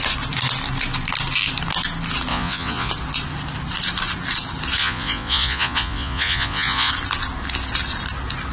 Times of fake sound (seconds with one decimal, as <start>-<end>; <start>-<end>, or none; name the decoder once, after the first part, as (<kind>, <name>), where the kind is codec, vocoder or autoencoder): 2.3-2.9 (vocoder, Vocos); 4.8-6.9